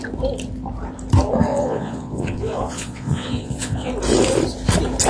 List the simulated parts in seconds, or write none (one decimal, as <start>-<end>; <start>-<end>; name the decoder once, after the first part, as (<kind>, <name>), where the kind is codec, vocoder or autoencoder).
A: 1.5-3.9 (vocoder, Vocos)